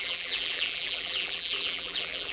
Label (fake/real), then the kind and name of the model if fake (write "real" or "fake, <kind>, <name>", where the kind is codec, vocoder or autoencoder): fake, vocoder, BigVGAN v2